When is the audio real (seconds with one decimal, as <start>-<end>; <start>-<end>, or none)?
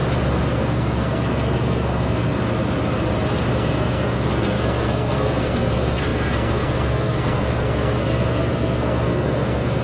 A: 0.0-0.5; 2.3-3.5